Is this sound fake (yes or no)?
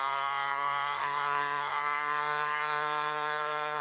yes